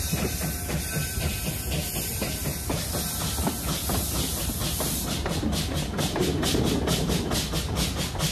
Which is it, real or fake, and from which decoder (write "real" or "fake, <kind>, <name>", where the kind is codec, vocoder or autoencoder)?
real